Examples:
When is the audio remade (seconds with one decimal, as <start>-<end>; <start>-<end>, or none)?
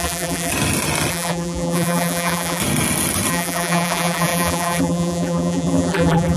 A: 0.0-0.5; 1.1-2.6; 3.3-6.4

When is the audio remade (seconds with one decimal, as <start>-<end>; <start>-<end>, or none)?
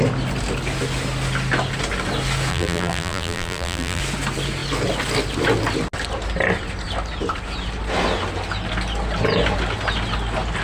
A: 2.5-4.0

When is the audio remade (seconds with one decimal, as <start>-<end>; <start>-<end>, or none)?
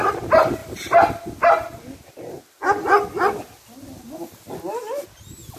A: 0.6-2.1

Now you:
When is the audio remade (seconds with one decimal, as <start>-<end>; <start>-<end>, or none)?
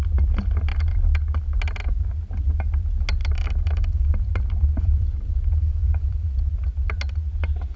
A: 3.2-6.4